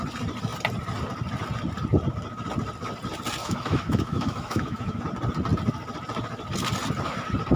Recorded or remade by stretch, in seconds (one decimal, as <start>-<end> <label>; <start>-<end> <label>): 0.0-3.4 recorded; 3.4-5.0 remade; 5.0-7.6 recorded